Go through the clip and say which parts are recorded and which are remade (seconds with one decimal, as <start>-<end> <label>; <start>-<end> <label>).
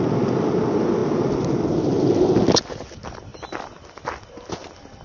0.0-5.0 recorded